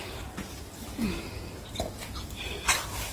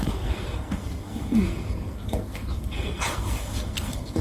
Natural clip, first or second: first